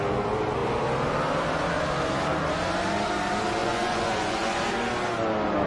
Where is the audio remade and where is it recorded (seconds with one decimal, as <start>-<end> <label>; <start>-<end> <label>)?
0.0-3.6 recorded; 3.6-4.6 remade; 4.6-5.7 recorded